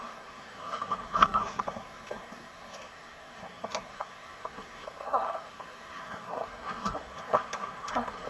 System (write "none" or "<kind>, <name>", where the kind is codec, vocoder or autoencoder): codec, SNAC